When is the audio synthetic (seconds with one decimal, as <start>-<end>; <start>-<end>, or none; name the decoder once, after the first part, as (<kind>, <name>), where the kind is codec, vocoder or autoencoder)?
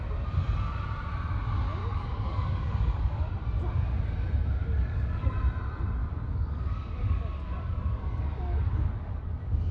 1.8-3.3 (codec, DAC); 4.6-5.3; 6.0-9.7